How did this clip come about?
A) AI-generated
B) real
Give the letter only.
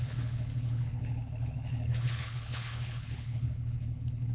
A